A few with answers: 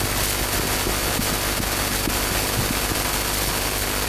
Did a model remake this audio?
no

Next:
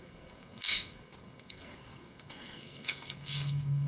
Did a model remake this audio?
yes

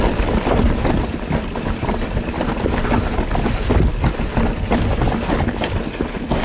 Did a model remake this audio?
no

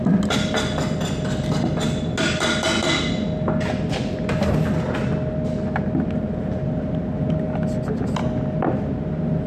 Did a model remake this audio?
no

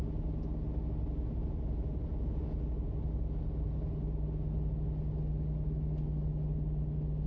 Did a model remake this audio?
no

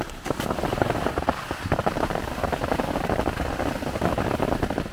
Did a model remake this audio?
yes